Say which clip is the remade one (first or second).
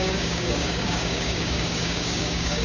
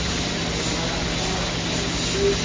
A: first